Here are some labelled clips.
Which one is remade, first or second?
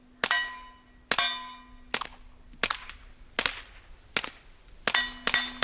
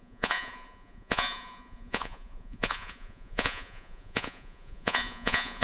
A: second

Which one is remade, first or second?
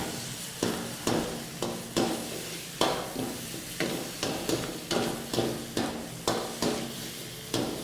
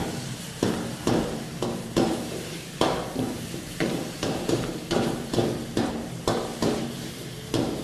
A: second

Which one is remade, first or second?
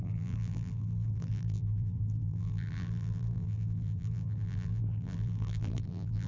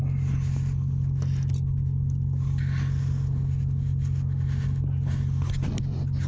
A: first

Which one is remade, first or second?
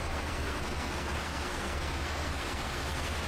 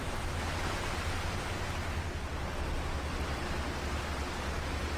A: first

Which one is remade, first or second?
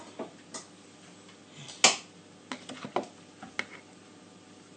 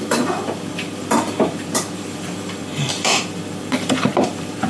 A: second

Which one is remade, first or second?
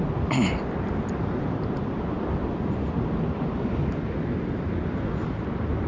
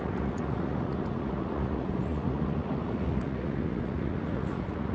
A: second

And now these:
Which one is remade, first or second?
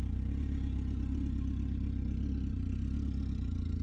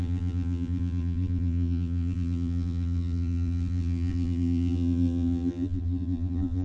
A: second